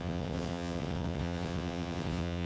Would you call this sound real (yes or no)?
no